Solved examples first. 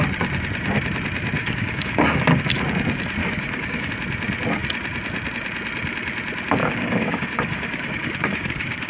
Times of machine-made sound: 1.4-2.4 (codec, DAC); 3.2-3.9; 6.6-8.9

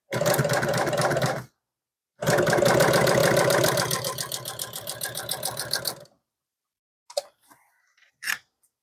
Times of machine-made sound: 3.2-8.1 (vocoder, BigVGAN v2)

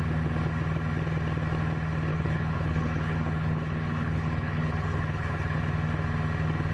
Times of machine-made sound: 2.1-5.6 (codec, HILCodec)

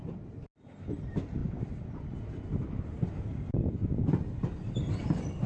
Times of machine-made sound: none

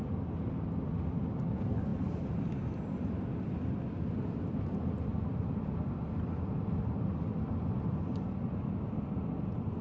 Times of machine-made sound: none

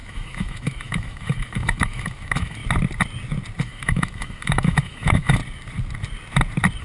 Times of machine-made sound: 0.0-2.6 (autoencoder, DAC-VAE); 3.6-5.4